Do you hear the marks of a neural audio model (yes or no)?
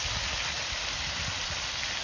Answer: yes